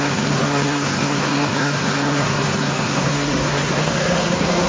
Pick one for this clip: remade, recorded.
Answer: remade